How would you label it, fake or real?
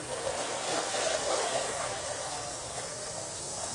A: fake